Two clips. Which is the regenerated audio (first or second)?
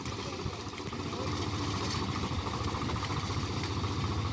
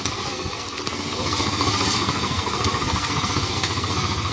second